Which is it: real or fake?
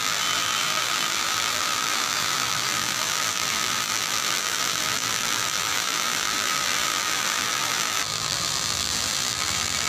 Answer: fake